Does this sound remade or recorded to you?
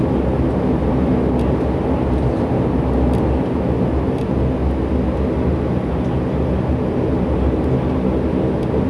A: recorded